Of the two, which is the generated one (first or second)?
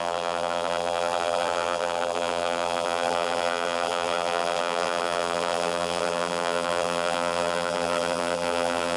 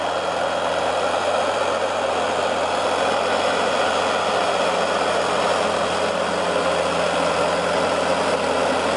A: first